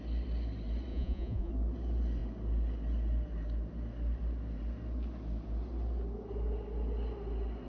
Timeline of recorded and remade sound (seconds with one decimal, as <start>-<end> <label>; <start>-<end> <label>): 0.0-0.9 recorded; 0.9-1.5 remade; 1.5-7.7 recorded